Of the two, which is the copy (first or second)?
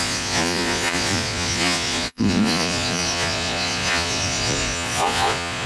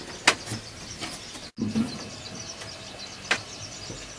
first